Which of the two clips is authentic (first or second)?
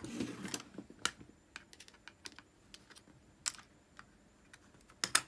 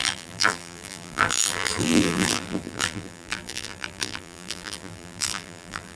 first